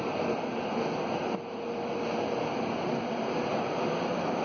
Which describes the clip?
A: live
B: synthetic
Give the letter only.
A